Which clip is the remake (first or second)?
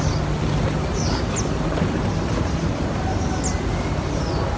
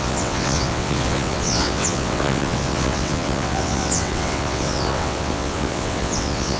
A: second